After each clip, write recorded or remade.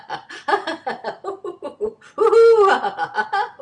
recorded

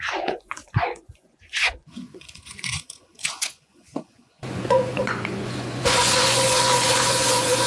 remade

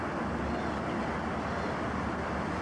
recorded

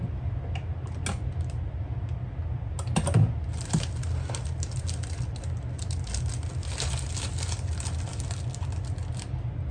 recorded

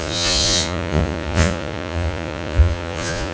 remade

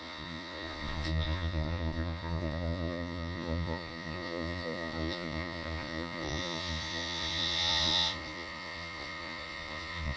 remade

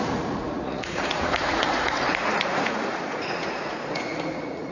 remade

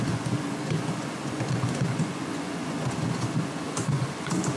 remade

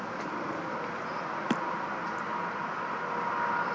recorded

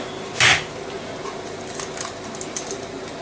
recorded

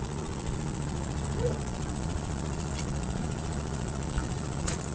remade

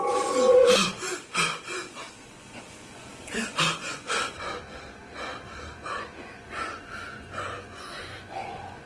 remade